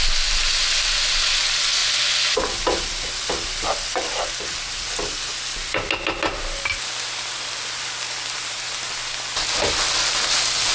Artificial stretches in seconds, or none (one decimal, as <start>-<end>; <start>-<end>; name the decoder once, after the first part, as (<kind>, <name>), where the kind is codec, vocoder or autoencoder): none